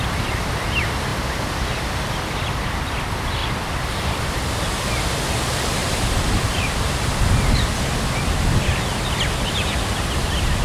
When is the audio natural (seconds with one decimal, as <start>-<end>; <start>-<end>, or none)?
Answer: 0.0-3.4; 4.0-5.8; 7.1-10.6